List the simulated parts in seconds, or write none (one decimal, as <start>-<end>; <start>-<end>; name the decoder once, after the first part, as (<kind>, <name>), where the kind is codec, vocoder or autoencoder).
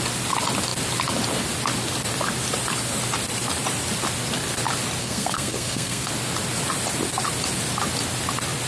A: 5.0-6.1 (codec, SNAC)